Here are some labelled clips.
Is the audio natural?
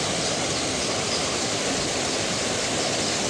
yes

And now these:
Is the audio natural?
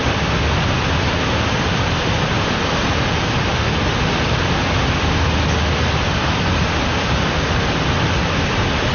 yes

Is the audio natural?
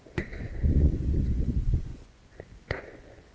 no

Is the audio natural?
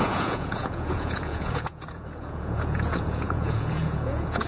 no